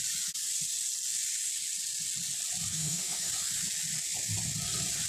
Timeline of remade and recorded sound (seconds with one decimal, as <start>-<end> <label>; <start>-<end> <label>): 0.0-2.7 recorded; 2.7-3.3 remade; 3.3-5.1 recorded